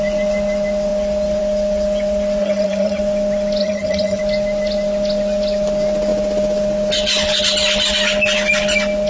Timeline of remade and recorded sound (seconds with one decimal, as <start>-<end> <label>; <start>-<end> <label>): 0.0-2.4 recorded; 2.4-3.0 remade; 3.0-3.6 recorded; 3.6-4.2 remade; 4.2-9.1 recorded